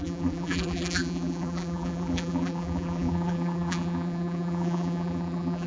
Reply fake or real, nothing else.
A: fake